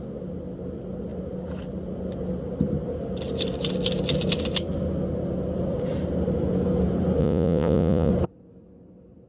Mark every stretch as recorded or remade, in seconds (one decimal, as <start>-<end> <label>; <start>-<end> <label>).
0.0-7.2 recorded; 7.2-8.1 remade; 8.1-9.3 recorded